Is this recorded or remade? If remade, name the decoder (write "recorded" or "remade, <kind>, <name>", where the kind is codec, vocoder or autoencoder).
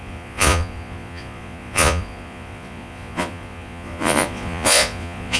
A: remade, vocoder, Vocos